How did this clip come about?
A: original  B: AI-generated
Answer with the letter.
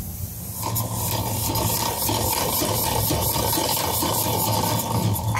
A